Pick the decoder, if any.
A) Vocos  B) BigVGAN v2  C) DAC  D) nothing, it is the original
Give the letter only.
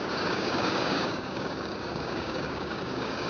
C